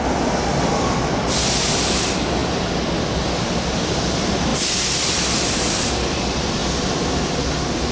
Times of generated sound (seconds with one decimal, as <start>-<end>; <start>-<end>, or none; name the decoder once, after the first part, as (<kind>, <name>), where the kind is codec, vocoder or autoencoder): 6.6-7.2 (vocoder, BigVGAN v2)